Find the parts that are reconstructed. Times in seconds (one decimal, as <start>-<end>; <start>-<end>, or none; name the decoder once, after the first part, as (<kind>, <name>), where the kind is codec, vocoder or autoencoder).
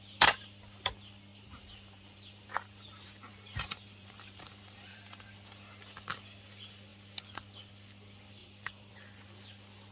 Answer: 1.3-5.3 (vocoder, BigVGAN v2); 8.4-8.9